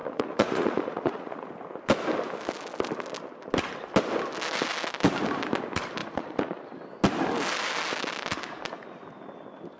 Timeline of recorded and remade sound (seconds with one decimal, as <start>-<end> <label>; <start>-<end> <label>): 0.0-1.5 remade; 1.5-6.0 recorded; 6.0-6.6 remade; 6.6-9.8 recorded